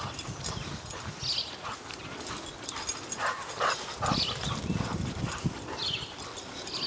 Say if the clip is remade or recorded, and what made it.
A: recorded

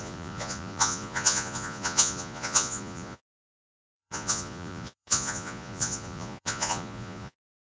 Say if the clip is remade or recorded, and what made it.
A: remade, vocoder, Vocos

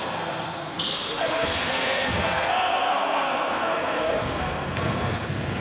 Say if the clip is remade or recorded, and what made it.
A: remade, codec, SNAC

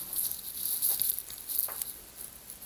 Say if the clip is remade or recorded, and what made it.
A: recorded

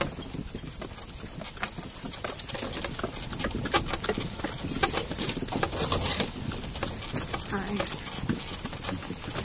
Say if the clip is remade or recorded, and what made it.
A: recorded